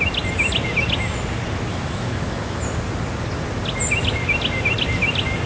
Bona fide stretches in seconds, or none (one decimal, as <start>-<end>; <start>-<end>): 0.0-1.7; 2.6-5.5